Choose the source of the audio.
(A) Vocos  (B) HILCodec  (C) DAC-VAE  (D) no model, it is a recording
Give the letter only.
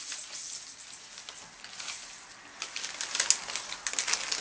D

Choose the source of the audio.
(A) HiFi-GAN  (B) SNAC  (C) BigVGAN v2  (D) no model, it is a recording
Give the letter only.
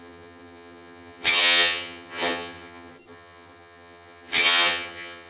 A